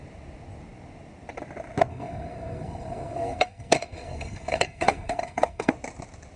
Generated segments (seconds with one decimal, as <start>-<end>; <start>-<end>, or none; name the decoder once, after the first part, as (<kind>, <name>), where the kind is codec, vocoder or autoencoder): 1.9-5.7 (codec, SNAC)